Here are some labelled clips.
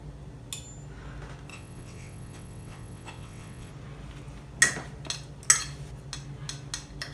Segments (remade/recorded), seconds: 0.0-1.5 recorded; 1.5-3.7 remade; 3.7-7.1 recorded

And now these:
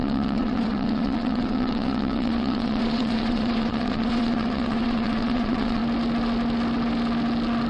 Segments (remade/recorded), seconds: 0.0-5.8 remade; 5.8-7.7 recorded

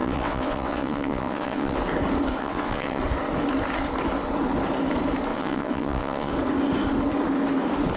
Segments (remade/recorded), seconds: 0.0-1.8 remade; 1.8-2.4 recorded; 2.4-3.0 remade; 3.0-5.3 recorded; 5.3-6.3 remade; 6.3-8.0 recorded

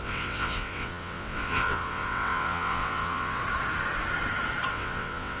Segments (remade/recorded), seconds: 0.0-3.4 remade; 3.4-4.7 recorded; 4.7-5.4 remade

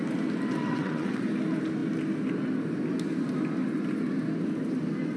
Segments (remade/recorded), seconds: 0.0-0.6 recorded; 0.6-1.2 remade; 1.2-5.2 recorded

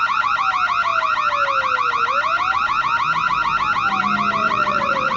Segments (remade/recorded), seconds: 0.0-4.4 recorded; 4.4-5.2 remade

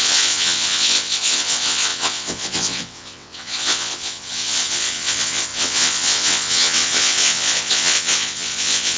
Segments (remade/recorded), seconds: 0.0-9.0 remade